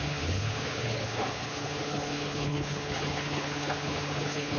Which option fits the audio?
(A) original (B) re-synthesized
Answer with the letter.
B